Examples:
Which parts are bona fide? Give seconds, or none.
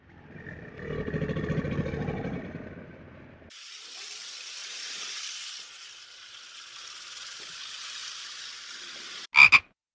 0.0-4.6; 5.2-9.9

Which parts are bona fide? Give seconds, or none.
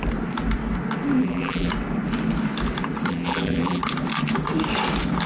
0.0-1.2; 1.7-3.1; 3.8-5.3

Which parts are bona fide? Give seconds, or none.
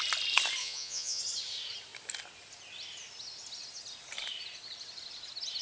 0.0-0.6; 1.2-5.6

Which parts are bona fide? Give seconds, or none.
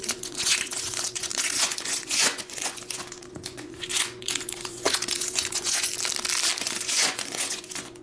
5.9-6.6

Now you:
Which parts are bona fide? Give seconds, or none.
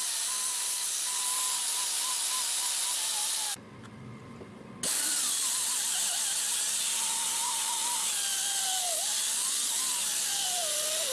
0.0-11.1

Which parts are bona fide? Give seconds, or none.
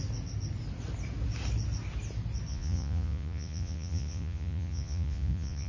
0.0-2.5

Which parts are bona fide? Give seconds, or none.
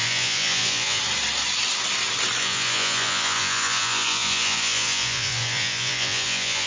1.0-2.4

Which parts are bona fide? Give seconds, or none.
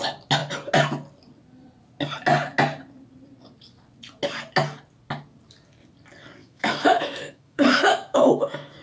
0.0-6.4